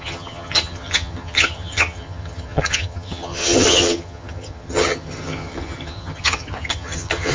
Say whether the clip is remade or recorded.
remade